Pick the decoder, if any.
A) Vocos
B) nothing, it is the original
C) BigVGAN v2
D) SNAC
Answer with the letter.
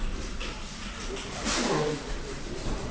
C